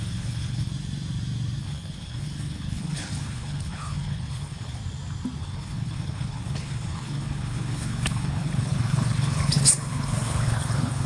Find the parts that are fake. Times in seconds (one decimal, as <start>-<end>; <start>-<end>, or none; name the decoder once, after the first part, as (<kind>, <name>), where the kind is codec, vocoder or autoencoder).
0.0-0.7 (codec, HILCodec); 1.6-4.8; 5.4-11.1